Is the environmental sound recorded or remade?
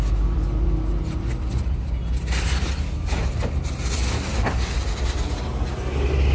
recorded